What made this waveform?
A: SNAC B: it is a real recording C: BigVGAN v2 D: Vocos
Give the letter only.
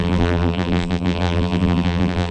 C